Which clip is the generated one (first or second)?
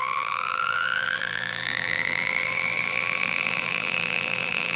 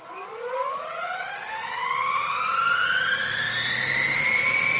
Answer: first